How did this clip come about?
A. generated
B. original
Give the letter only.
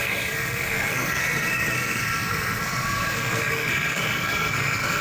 A